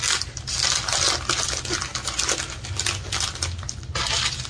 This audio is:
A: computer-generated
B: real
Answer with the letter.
B